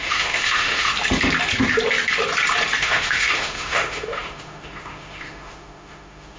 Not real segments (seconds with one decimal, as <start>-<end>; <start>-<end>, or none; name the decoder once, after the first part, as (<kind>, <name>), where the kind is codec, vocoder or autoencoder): 0.0-0.9 (autoencoder, DAC-VAE); 2.8-6.4